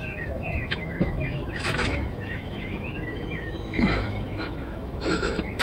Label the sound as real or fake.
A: fake